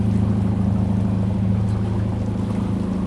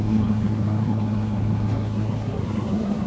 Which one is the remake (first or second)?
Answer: second